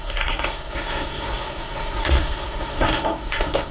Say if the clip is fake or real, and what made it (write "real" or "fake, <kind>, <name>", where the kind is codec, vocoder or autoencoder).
fake, codec, SNAC